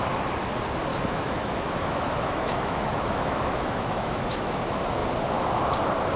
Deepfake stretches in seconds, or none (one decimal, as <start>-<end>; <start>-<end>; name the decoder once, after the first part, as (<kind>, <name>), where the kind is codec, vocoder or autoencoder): 0.9-4.6 (autoencoder, DAC-VAE)